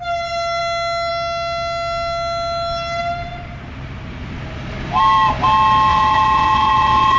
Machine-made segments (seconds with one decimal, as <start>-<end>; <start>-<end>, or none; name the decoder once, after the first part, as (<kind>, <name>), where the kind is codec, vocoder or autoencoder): 5.9-7.2 (vocoder, Vocos)